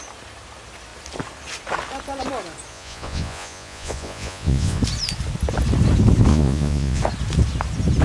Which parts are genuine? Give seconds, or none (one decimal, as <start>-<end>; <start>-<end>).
0.0-2.7; 4.8-6.3; 7.0-8.0